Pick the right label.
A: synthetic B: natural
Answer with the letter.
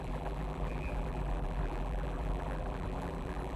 A